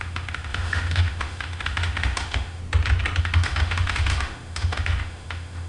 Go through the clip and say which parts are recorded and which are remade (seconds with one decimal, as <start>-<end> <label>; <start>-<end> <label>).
0.0-2.6 remade; 2.6-3.2 recorded; 3.2-5.7 remade